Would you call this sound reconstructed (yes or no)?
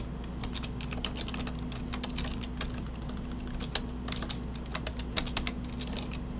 no